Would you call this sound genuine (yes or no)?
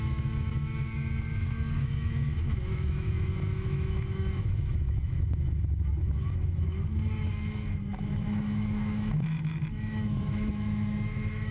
no